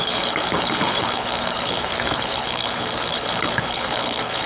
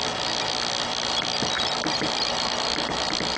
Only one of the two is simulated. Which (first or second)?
first